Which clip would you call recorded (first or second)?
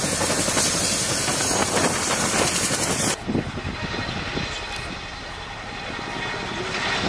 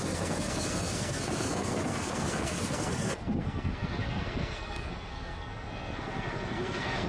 first